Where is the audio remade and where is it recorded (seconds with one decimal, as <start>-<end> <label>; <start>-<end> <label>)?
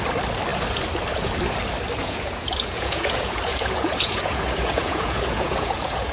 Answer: 0.0-2.0 recorded; 2.0-6.1 remade